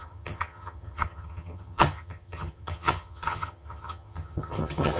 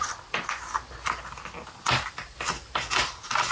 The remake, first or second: first